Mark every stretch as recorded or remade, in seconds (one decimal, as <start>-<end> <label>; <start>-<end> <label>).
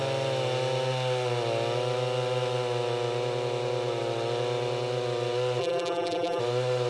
0.0-5.6 recorded; 5.6-6.4 remade; 6.4-6.9 recorded